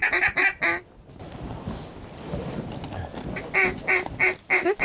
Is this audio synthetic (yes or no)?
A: no